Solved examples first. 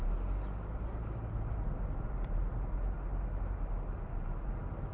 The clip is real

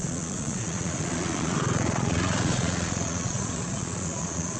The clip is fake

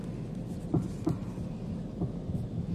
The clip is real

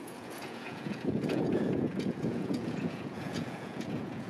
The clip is fake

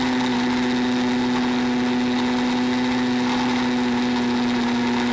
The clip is real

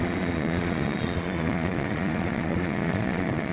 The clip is fake